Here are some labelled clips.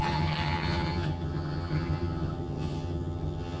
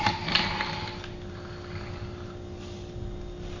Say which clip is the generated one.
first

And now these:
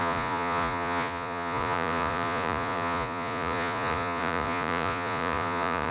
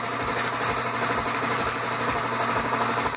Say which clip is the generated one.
first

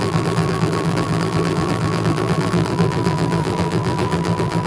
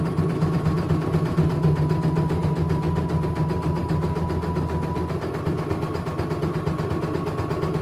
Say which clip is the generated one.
first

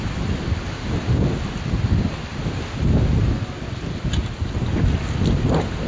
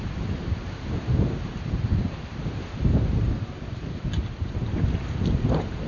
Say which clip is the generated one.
second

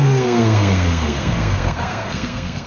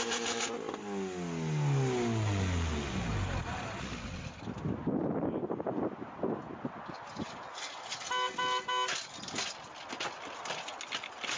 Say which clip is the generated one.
first